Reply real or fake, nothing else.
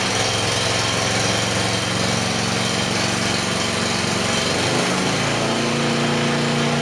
real